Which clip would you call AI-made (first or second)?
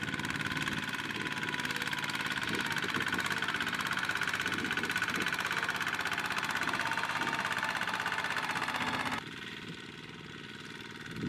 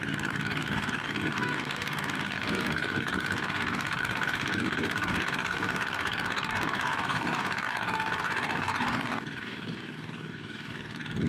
second